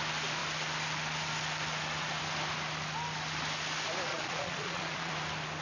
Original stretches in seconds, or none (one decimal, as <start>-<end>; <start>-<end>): 0.0-4.1; 5.1-5.6